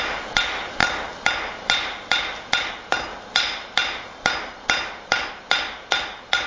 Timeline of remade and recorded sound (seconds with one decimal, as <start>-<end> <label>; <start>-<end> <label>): 0.0-6.5 recorded